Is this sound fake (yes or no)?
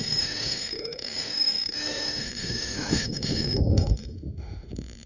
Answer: yes